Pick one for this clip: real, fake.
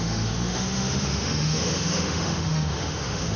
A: fake